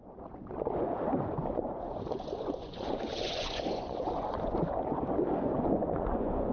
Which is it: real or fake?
fake